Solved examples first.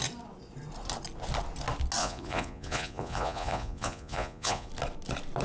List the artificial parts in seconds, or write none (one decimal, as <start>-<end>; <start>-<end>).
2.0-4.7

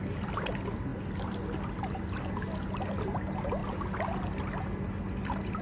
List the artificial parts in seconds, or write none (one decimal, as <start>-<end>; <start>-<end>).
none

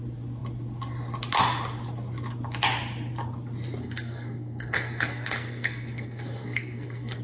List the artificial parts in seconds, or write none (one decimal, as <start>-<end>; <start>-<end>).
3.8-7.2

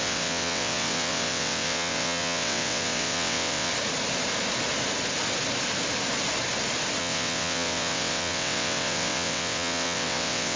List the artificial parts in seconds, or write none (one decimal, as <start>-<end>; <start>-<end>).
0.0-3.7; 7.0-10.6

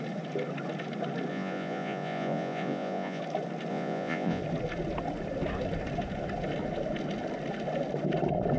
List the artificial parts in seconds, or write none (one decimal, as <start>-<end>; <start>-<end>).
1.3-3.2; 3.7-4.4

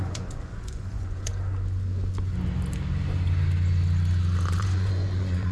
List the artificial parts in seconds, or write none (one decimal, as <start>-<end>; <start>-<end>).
0.0-1.3; 4.6-5.5

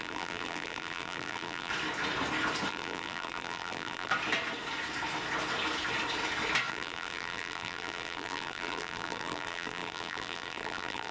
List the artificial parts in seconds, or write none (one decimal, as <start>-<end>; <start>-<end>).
0.0-1.7; 2.7-4.1; 6.7-11.1